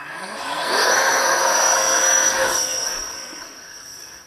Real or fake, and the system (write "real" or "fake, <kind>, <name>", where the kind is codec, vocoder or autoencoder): fake, codec, SNAC